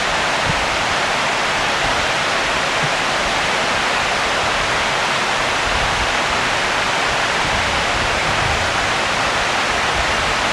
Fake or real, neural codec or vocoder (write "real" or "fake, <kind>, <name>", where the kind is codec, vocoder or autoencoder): real